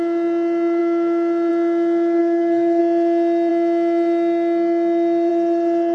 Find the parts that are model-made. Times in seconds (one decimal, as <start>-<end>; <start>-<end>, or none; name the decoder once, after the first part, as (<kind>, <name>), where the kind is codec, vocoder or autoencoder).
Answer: 2.2-2.8 (codec, SNAC)